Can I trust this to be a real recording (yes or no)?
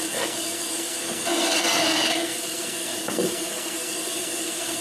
no